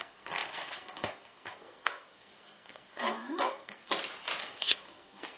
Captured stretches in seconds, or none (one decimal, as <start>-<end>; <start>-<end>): 3.9-4.4